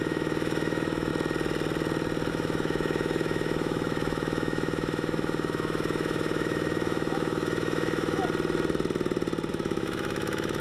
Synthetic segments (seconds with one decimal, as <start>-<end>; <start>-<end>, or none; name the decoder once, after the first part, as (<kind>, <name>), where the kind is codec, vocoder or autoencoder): 0.0-1.1 (autoencoder, DAC-VAE); 2.3-8.2; 9.5-10.6